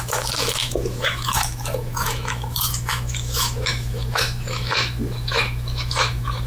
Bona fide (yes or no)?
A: no